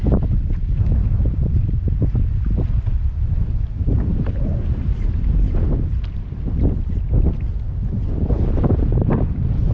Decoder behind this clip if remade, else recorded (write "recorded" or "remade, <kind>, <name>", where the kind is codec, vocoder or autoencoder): remade, vocoder, BigVGAN v2